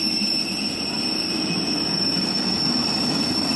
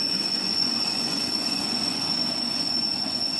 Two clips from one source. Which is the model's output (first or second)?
second